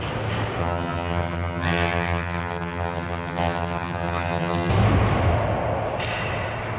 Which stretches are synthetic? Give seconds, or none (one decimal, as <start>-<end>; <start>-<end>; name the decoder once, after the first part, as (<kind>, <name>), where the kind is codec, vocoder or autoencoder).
0.6-4.7 (vocoder, HiFi-GAN)